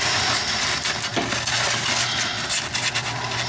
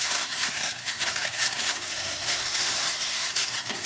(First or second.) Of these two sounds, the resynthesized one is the second